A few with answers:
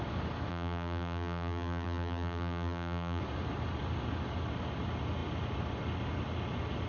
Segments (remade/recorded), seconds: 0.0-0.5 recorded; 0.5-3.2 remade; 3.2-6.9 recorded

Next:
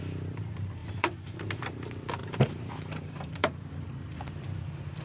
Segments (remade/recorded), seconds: 0.0-0.8 recorded; 0.8-1.6 remade; 1.6-2.2 recorded; 2.2-4.6 remade; 4.6-5.0 recorded

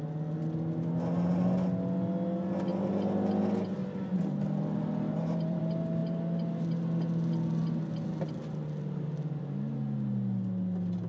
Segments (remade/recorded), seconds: 0.0-5.1 recorded; 5.1-5.6 remade; 5.6-11.1 recorded